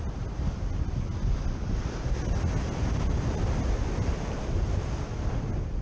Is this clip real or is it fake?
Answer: real